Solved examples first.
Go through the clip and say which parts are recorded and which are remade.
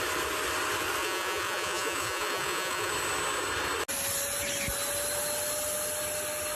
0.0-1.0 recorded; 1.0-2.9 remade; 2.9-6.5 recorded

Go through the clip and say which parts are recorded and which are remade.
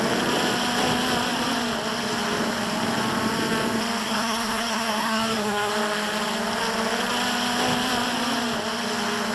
0.0-4.0 recorded; 4.0-5.7 remade; 5.7-9.3 recorded